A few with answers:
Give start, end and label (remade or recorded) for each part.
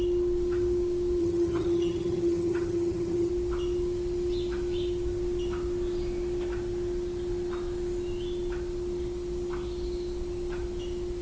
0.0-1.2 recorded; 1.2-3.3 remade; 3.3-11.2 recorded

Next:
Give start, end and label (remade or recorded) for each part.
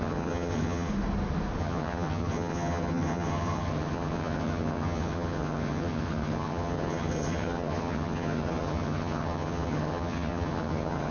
0.0-0.9 remade; 0.9-1.6 recorded; 1.6-11.1 remade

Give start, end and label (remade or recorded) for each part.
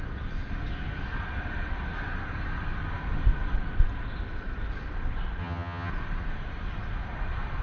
0.0-5.4 recorded; 5.4-5.9 remade; 5.9-7.6 recorded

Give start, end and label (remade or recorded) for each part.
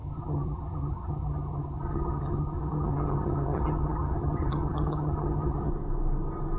0.0-5.7 remade; 5.7-6.6 recorded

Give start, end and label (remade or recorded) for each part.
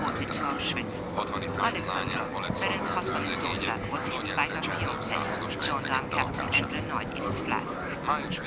0.0-8.5 recorded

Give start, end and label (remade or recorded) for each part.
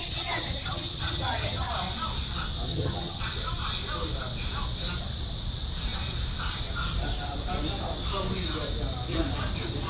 0.0-1.7 remade; 1.7-2.7 recorded; 2.7-3.2 remade; 3.2-9.9 recorded